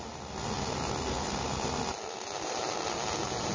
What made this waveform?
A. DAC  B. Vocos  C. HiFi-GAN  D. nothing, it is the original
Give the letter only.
D